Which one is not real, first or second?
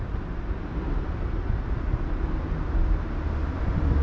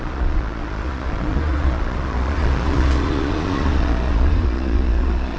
second